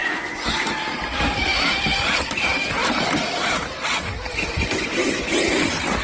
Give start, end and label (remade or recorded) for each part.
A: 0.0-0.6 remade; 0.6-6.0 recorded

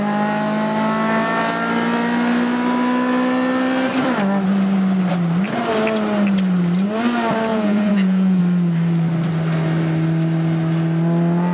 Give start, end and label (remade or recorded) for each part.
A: 0.0-7.5 recorded; 7.5-8.4 remade; 8.4-11.5 recorded